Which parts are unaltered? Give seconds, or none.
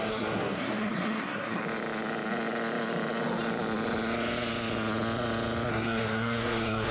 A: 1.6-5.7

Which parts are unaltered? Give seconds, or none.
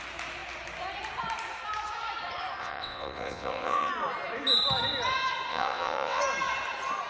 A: 0.0-2.6; 3.9-5.5; 6.2-7.1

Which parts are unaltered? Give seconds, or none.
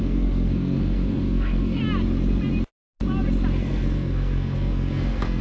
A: 1.8-3.6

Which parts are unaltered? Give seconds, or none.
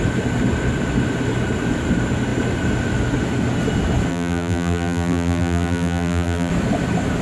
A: 0.0-4.1; 6.5-7.2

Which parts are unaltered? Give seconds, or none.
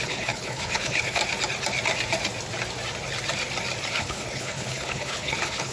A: 1.2-3.9